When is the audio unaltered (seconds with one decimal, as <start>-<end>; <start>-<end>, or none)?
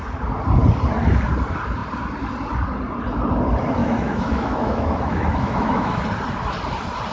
0.0-3.8; 6.0-7.1